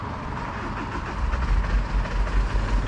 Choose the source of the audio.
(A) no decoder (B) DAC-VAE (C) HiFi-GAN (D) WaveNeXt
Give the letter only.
A